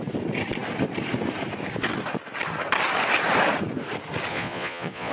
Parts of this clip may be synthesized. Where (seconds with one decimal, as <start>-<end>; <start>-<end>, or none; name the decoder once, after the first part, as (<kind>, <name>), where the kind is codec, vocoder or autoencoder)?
4.3-5.1 (vocoder, Vocos)